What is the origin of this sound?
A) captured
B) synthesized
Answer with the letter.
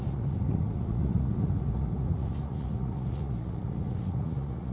B